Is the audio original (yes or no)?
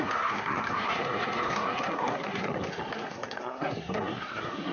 no